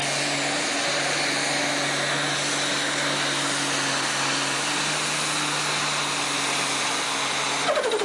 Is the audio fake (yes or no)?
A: no